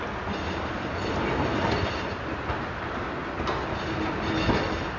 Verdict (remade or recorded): recorded